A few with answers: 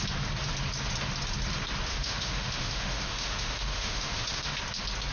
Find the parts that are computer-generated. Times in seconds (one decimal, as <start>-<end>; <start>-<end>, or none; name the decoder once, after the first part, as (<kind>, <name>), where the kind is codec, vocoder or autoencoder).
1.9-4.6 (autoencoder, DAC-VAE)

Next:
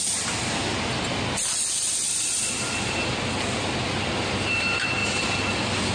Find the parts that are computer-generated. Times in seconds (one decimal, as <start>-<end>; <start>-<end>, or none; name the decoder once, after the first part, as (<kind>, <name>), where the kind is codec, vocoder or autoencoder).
none

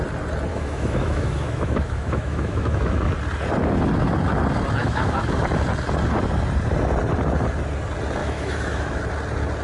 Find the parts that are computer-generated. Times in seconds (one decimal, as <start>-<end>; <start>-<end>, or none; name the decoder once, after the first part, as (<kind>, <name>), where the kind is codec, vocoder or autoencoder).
0.5-3.1 (autoencoder, DAC-VAE); 4.8-5.4; 8.2-9.0